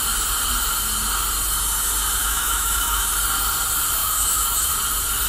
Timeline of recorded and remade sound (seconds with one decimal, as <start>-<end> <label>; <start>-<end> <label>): 0.0-2.2 recorded; 2.2-3.1 remade; 3.1-4.0 recorded; 4.0-4.7 remade; 4.7-5.3 recorded